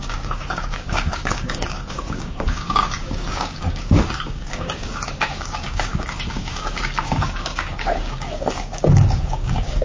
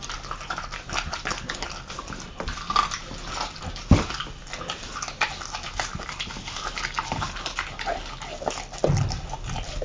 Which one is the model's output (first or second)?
first